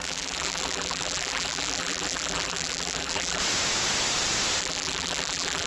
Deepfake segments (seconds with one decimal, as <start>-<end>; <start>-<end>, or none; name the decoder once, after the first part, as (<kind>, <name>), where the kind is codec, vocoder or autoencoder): 0.0-3.4 (vocoder, BigVGAN v2); 4.6-5.7